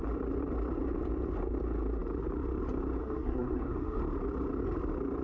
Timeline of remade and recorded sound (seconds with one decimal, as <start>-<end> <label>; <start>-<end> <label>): 0.0-3.0 recorded; 3.0-4.0 remade; 4.0-5.2 recorded

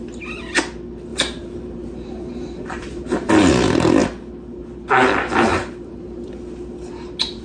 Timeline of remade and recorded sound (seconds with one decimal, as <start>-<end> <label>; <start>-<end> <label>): 0.0-1.1 recorded; 1.1-3.3 remade; 3.3-5.5 recorded; 5.5-6.3 remade; 6.3-7.4 recorded

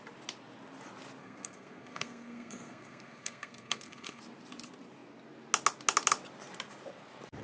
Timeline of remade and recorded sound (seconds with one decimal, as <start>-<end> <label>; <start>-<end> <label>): 0.0-1.2 recorded; 1.2-4.2 remade; 4.2-7.4 recorded